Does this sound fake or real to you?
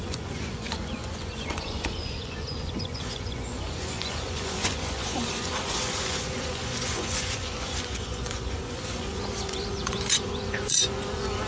fake